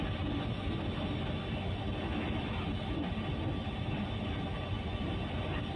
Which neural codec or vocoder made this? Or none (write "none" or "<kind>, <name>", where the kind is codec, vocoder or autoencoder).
none